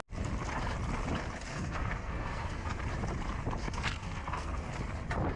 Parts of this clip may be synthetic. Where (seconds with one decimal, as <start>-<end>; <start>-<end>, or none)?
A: 1.5-2.8; 3.6-4.7

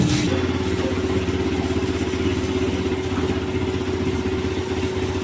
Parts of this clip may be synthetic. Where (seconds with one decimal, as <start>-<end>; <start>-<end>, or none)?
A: none